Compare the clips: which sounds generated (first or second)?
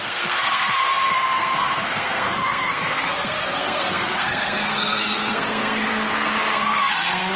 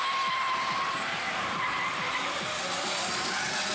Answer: first